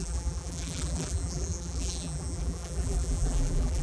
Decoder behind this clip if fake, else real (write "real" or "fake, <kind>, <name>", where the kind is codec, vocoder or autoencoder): fake, vocoder, BigVGAN v2